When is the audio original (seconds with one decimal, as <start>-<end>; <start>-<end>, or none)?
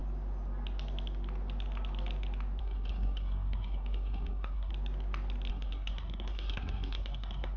0.0-2.6; 4.7-5.5